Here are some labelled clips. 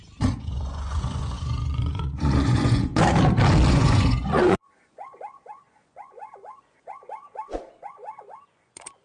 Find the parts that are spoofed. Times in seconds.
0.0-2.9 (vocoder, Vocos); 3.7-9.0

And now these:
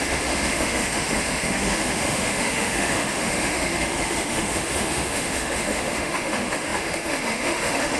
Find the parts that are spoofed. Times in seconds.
0.0-8.0 (autoencoder, DAC-VAE)

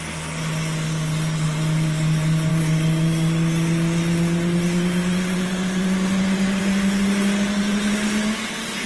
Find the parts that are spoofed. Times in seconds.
none

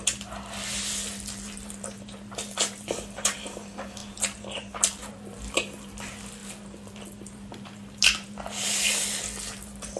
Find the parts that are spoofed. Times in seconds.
none

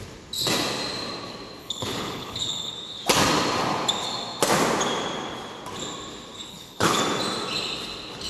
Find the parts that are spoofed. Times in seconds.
1.6-2.7 (codec, HILCodec); 6.5-7.0